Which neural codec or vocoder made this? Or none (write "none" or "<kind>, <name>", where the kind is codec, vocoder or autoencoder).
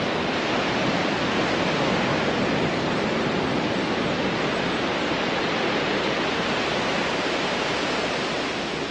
none